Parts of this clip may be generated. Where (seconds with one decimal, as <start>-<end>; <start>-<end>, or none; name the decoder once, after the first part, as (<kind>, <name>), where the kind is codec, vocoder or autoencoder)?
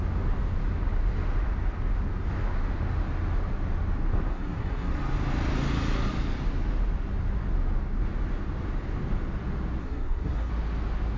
4.3-4.9 (codec, SNAC); 9.8-10.5